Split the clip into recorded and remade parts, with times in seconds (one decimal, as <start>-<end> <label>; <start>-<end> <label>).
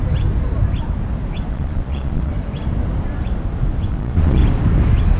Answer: 0.0-1.5 recorded; 1.5-2.3 remade; 2.3-3.9 recorded; 3.9-4.4 remade; 4.4-5.2 recorded